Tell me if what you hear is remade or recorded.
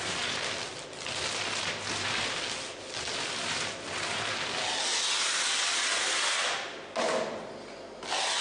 recorded